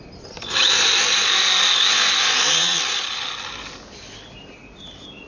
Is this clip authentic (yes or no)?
yes